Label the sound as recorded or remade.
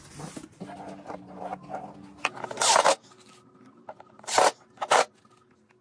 recorded